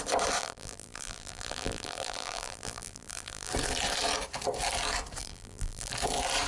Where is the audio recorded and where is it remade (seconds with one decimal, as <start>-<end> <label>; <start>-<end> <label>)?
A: 0.0-0.4 recorded; 0.4-3.5 remade; 3.5-5.2 recorded; 5.2-5.9 remade; 5.9-6.5 recorded